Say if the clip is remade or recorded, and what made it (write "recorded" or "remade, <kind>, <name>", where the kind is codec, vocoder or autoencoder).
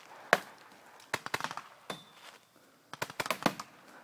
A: recorded